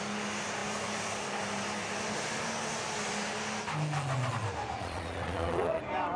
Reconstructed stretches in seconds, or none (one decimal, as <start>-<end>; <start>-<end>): 4.8-5.8